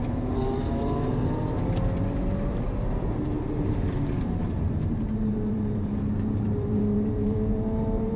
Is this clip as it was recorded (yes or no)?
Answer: no